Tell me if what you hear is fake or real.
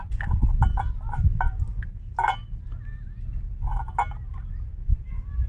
real